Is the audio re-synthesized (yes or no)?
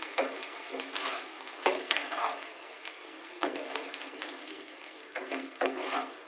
yes